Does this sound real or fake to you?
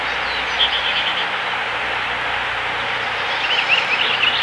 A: real